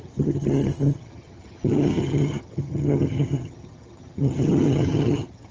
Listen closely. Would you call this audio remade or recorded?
remade